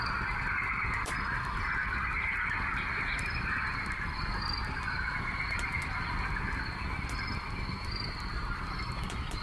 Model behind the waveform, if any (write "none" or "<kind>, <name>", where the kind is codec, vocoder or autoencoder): none